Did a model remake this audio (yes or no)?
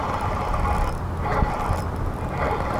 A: no